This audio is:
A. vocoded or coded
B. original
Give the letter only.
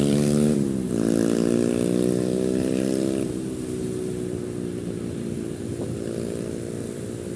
B